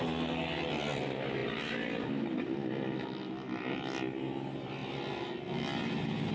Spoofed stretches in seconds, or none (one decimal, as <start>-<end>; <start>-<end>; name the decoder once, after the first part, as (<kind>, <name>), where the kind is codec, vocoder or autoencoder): none